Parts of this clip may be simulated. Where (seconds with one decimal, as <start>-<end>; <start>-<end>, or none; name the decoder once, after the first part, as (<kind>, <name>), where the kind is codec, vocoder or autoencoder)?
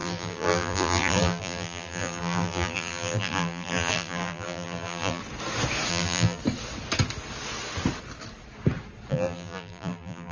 0.0-5.2 (vocoder, BigVGAN v2); 5.9-6.4; 9.1-10.3